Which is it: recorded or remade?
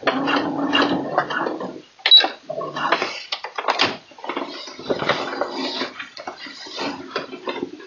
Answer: recorded